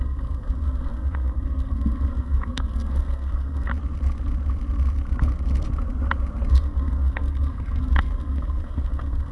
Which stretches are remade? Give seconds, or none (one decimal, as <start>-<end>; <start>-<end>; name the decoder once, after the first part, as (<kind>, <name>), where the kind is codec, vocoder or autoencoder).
0.0-3.7 (codec, SNAC); 6.5-9.3